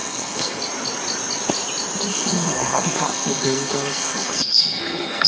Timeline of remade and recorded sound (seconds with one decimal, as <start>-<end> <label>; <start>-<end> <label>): 0.0-0.6 remade; 0.6-2.1 recorded; 2.1-5.3 remade